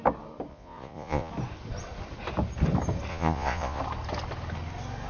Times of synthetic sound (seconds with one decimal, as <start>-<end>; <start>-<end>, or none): 0.5-1.3; 3.1-3.8

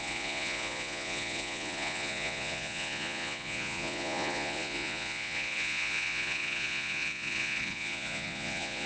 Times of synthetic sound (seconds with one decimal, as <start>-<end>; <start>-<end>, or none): 0.0-8.9

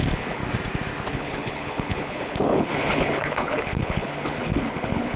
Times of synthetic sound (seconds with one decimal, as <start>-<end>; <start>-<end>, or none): 0.0-0.4; 1.1-5.2

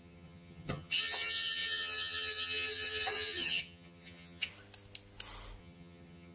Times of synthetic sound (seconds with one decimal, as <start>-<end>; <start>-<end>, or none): 0.0-4.5; 5.6-6.3

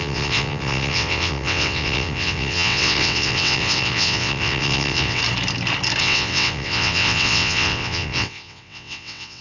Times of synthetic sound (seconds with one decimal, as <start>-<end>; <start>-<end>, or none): 0.0-5.2; 6.0-9.4

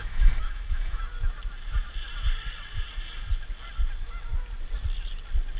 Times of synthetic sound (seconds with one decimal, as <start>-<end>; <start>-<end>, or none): 0.0-1.0

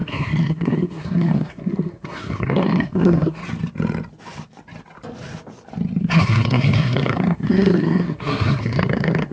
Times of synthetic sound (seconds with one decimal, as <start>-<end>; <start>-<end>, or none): 0.0-3.4; 6.0-9.3